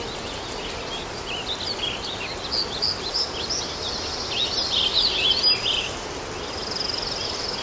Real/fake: real